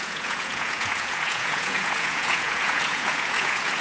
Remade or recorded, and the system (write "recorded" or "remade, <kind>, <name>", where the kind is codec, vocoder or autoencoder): remade, vocoder, Vocos